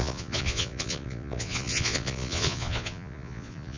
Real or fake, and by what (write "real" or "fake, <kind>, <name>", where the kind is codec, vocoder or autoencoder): fake, vocoder, Vocos